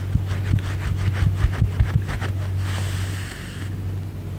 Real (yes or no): yes